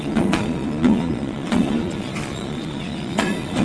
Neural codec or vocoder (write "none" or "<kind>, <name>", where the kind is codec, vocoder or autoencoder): vocoder, Vocos